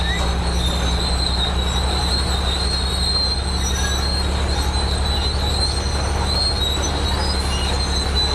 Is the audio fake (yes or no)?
no